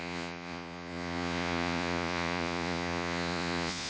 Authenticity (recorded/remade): remade